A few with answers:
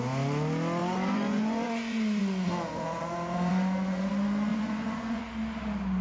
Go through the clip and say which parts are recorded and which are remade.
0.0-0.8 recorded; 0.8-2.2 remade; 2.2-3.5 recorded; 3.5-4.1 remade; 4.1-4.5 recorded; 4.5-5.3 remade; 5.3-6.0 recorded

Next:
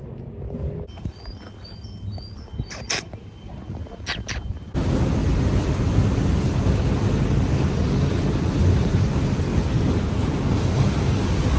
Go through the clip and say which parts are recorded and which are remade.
0.0-11.6 recorded

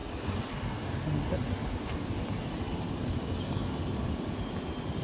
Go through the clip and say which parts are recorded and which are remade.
0.0-5.0 recorded

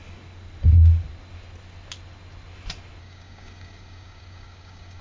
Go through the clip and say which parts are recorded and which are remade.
0.0-3.0 recorded; 3.0-5.0 remade

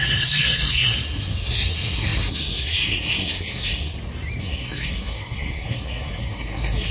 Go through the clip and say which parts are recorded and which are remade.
0.0-3.9 remade; 3.9-4.4 recorded; 4.4-6.9 remade

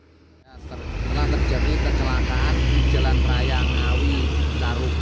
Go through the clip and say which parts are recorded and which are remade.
0.0-5.0 recorded

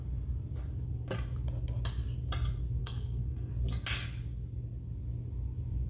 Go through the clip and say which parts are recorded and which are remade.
0.0-2.8 recorded; 2.8-3.5 remade; 3.5-5.9 recorded